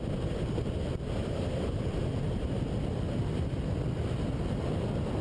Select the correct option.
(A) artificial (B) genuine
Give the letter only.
B